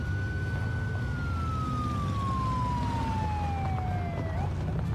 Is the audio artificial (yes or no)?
no